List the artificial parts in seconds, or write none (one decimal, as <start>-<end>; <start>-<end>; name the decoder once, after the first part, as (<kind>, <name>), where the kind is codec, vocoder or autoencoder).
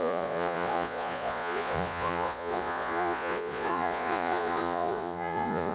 0.0-5.7 (vocoder, Vocos)